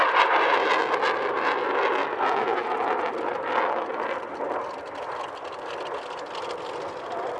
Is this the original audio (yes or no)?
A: yes